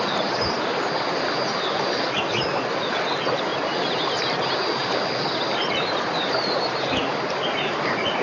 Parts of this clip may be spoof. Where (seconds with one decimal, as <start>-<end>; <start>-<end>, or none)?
none